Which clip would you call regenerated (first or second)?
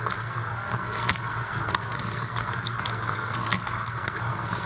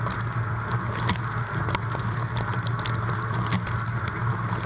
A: first